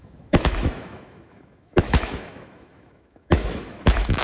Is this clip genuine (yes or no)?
no